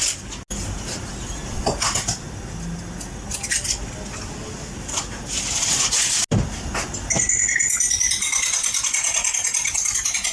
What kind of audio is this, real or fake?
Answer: real